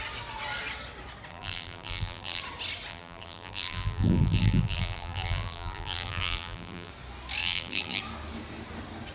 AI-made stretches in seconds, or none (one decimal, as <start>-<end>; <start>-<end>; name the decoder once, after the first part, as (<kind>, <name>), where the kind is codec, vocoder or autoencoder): 1.3-2.4 (vocoder, BigVGAN v2); 2.9-6.9; 7.4-8.0